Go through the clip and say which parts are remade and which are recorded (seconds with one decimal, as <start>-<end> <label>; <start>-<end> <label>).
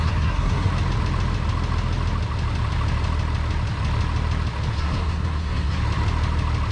0.0-0.7 remade; 0.7-4.7 recorded; 4.7-5.8 remade; 5.8-6.7 recorded